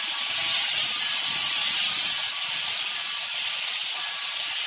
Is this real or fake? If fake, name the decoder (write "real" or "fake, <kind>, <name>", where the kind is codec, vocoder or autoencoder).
real